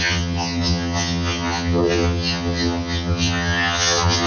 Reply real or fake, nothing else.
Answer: fake